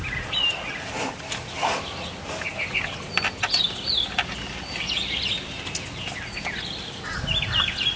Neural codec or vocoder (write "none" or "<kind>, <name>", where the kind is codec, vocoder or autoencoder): none